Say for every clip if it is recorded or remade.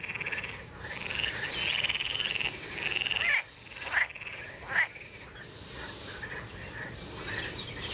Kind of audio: recorded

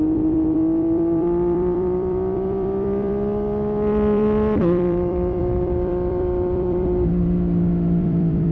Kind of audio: remade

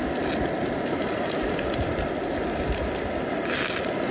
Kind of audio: recorded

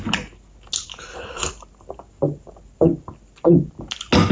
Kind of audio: recorded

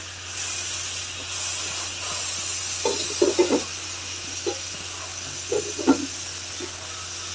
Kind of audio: recorded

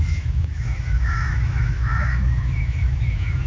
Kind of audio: remade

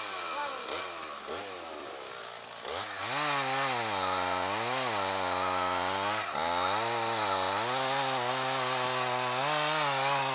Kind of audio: recorded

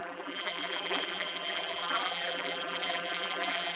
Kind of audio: remade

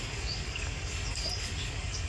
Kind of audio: remade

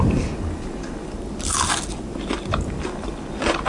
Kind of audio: recorded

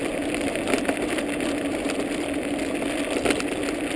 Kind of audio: recorded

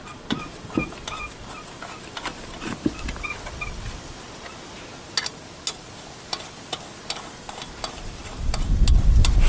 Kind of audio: recorded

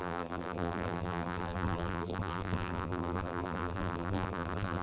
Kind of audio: remade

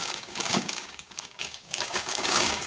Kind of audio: remade